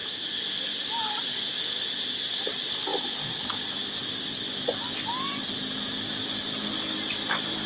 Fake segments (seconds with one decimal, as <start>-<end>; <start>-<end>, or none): none